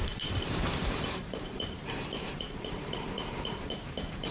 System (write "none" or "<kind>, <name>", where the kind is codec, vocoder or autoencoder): vocoder, BigVGAN v2